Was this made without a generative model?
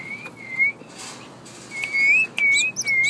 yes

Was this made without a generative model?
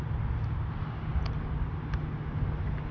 yes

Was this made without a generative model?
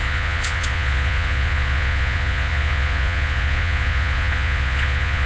no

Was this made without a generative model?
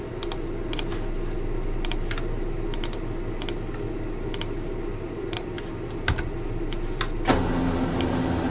yes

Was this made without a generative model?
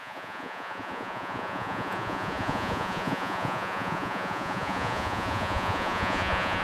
no